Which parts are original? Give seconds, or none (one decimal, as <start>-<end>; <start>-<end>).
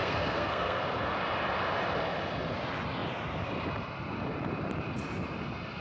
0.8-5.8